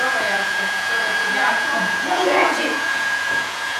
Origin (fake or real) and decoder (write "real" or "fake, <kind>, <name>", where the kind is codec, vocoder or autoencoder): fake, vocoder, Vocos